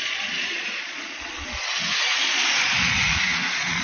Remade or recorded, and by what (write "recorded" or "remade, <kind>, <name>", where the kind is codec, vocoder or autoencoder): remade, vocoder, Vocos